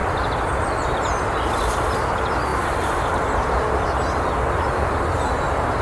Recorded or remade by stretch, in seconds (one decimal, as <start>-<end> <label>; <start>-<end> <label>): 0.0-5.8 recorded